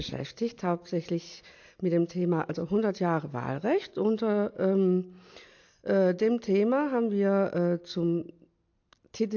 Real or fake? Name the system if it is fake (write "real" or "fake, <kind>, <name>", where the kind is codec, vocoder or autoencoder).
real